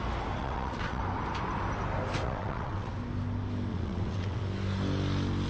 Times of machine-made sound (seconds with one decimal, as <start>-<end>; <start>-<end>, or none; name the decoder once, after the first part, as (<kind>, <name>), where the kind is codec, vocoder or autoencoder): 0.4-1.0 (vocoder, WaveNeXt); 2.2-2.9; 3.7-4.4